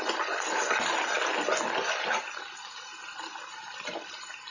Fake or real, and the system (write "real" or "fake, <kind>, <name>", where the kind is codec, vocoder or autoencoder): real